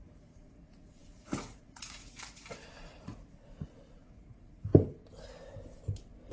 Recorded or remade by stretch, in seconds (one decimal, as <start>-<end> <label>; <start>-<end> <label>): 0.0-4.7 remade; 4.7-6.3 recorded